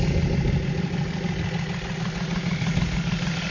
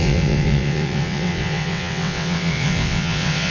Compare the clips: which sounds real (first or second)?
first